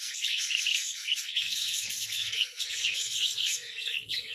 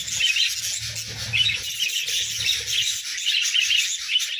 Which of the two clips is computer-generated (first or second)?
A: first